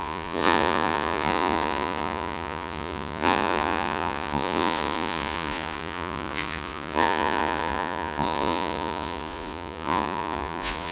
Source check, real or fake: fake